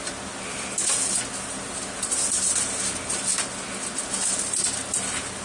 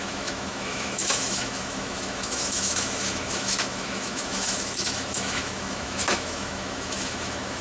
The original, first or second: first